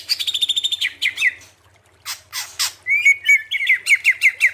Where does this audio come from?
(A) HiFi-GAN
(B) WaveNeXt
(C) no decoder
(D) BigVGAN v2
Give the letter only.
C